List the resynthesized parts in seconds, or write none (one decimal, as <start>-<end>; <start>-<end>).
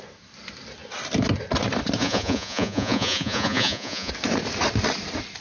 2.0-4.1